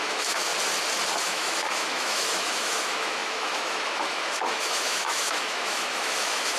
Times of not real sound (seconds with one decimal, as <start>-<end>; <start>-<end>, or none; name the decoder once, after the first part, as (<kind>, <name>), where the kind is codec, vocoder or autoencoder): 0.0-0.5 (autoencoder, DAC-VAE); 1.2-6.6